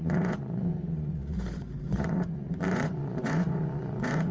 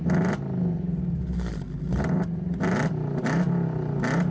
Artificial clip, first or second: first